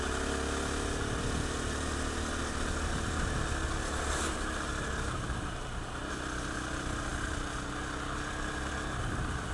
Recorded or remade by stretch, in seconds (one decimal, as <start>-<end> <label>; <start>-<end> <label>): 0.0-9.5 recorded